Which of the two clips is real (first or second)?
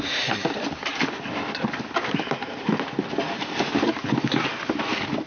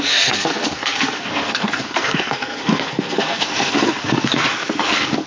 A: first